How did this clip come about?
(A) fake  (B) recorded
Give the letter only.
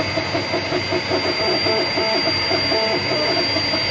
B